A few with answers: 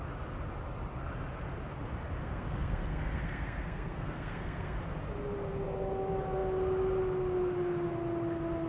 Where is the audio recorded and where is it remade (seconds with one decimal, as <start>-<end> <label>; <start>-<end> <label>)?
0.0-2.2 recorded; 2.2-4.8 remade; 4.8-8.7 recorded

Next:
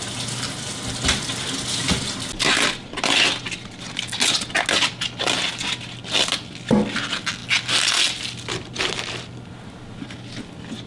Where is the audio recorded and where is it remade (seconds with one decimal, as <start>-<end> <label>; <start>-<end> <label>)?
0.0-10.9 recorded

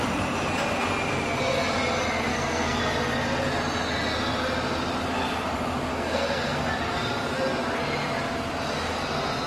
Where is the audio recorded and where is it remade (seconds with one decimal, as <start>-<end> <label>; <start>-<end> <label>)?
0.0-2.3 recorded; 2.3-2.8 remade; 2.8-5.9 recorded; 5.9-6.7 remade; 6.7-9.5 recorded